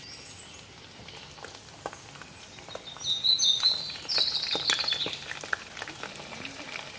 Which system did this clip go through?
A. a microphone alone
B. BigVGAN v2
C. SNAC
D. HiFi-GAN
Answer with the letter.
A